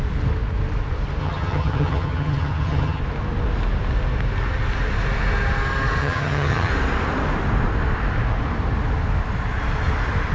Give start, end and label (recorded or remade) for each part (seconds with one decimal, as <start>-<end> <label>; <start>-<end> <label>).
0.0-1.2 recorded; 1.2-3.0 remade; 3.0-6.0 recorded; 6.0-6.7 remade; 6.7-10.3 recorded